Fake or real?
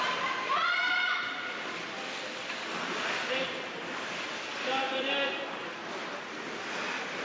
fake